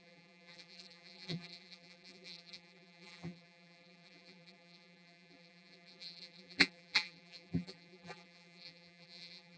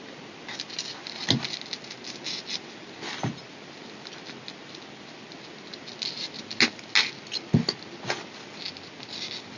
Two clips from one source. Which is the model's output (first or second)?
first